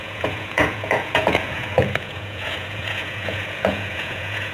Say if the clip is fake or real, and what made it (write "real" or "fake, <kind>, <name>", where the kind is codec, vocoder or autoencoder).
fake, vocoder, Vocos